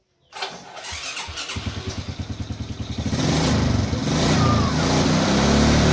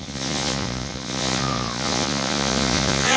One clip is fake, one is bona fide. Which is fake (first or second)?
second